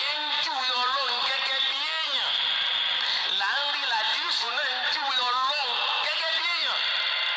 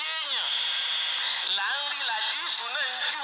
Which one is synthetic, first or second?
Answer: first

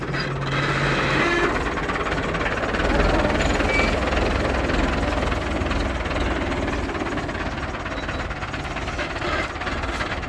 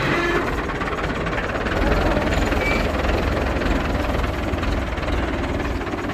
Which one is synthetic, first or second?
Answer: second